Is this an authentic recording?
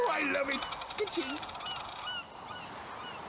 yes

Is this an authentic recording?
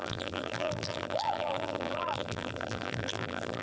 no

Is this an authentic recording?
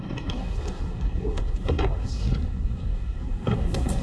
no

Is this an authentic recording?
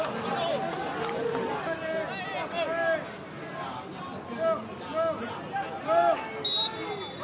yes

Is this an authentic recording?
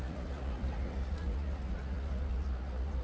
no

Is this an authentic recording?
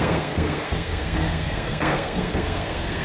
no